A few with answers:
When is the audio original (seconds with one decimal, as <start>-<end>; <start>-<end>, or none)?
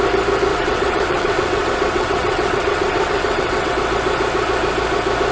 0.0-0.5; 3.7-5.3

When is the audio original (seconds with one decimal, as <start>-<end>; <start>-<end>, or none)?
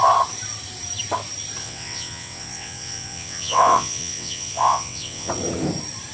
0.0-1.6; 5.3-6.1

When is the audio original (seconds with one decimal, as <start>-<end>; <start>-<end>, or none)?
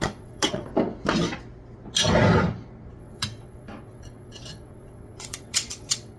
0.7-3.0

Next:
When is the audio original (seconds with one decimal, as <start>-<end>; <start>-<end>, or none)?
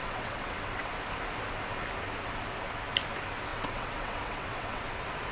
0.9-3.5; 4.8-5.3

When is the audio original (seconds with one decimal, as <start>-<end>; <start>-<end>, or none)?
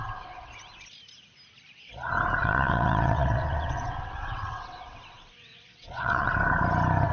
0.5-2.4; 6.3-7.1